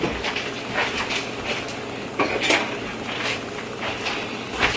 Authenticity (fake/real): real